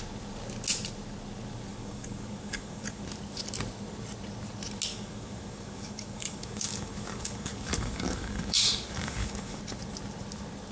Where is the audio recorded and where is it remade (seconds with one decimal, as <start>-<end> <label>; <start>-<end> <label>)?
0.0-1.7 recorded; 1.7-3.0 remade; 3.0-4.9 recorded; 4.9-9.6 remade; 9.6-10.7 recorded

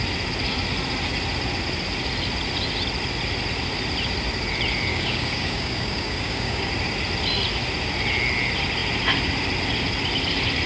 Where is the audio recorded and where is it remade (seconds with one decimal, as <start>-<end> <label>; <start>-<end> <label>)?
0.0-4.9 recorded; 4.9-6.7 remade; 6.7-10.7 recorded

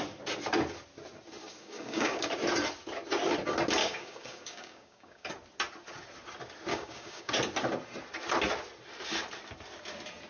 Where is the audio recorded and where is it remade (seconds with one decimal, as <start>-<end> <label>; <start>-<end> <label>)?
0.0-1.4 recorded; 1.4-2.2 remade; 2.2-3.8 recorded; 3.8-5.3 remade; 5.3-6.7 recorded; 6.7-7.3 remade; 7.3-10.3 recorded